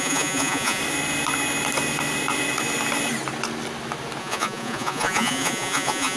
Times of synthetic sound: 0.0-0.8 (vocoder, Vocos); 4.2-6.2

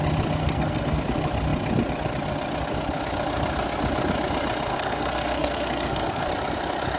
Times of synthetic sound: 0.4-1.0 (codec, SNAC); 4.7-6.3

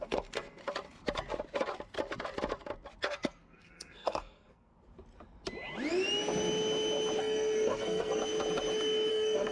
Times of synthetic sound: 0.0-0.6 (codec, SNAC); 3.0-4.7; 7.2-8.2; 9.1-9.5

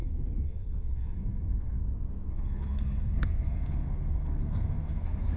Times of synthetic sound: 0.0-1.8 (codec, SNAC); 2.3-5.4